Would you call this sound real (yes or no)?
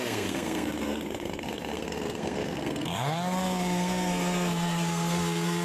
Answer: no